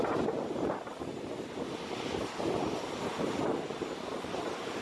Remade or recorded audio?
recorded